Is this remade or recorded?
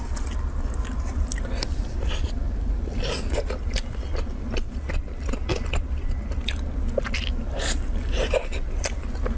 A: recorded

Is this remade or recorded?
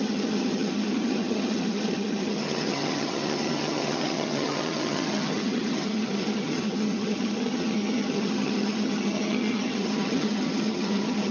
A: remade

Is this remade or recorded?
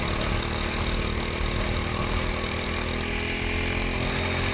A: recorded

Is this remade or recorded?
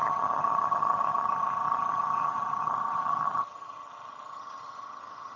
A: remade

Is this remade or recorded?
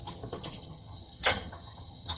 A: remade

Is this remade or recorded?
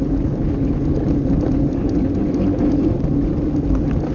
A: recorded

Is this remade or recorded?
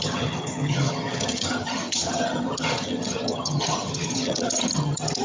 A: remade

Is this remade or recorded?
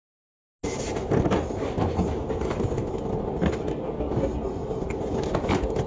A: recorded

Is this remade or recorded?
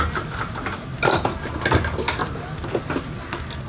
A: recorded